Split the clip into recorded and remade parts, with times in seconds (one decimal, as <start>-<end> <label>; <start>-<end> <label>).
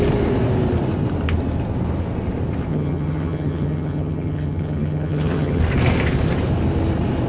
0.0-2.7 recorded; 2.7-5.6 remade; 5.6-7.3 recorded